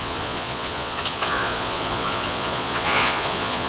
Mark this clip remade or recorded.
remade